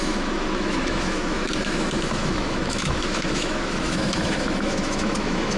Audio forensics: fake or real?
fake